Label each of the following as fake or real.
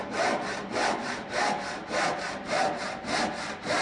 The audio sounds real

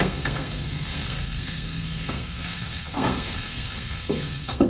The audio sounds fake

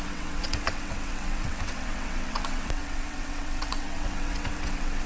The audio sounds fake